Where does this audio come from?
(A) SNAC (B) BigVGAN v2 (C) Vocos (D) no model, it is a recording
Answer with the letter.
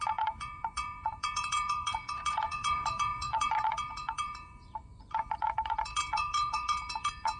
C